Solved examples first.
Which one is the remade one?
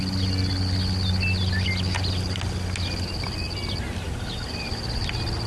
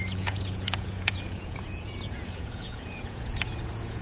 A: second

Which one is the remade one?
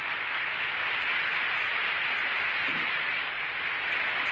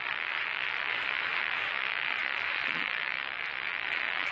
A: second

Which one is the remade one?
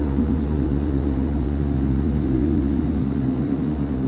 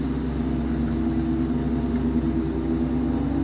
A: first